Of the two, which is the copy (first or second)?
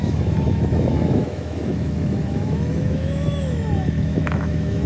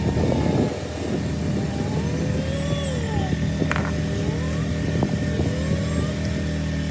first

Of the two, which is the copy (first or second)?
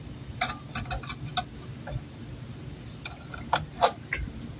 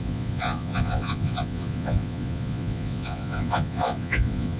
second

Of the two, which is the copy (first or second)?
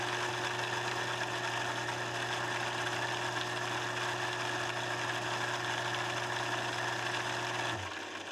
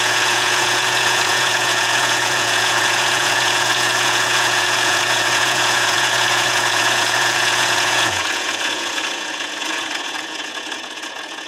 second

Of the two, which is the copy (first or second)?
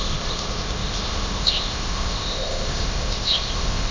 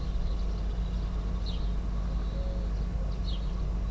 first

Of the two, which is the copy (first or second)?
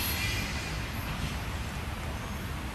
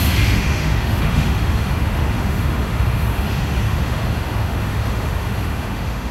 second